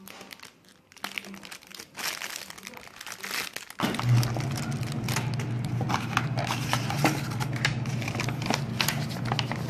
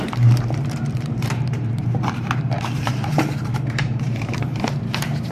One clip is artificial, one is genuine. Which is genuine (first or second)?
first